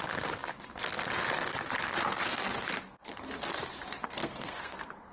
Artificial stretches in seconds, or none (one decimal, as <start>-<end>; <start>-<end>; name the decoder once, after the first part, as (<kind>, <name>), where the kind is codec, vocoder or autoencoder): 4.0-5.1 (codec, SNAC)